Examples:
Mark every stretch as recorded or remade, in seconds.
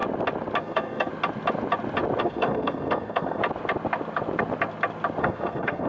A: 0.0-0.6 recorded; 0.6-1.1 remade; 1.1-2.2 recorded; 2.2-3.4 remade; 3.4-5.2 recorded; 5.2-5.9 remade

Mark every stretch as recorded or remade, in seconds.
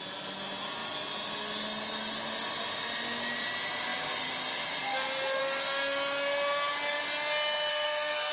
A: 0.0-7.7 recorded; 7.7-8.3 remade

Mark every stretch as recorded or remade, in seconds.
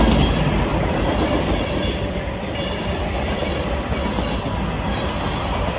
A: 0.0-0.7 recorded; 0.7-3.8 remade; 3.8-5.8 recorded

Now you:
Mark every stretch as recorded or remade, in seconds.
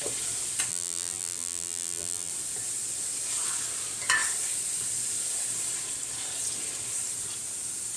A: 0.0-0.7 recorded; 0.7-2.3 remade; 2.3-8.0 recorded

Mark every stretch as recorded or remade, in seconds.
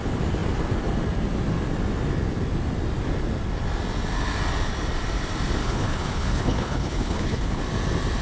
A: 0.0-5.6 recorded; 5.6-7.6 remade; 7.6-8.2 recorded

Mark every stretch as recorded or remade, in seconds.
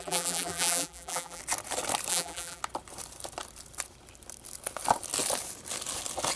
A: 0.0-1.4 remade; 1.4-2.1 recorded; 2.1-2.6 remade; 2.6-6.4 recorded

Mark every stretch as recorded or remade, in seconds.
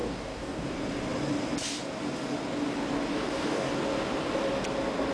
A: 0.0-0.7 remade; 0.7-3.1 recorded; 3.1-3.7 remade; 3.7-5.1 recorded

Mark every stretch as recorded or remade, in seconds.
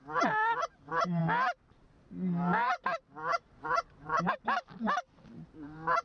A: 0.0-6.0 recorded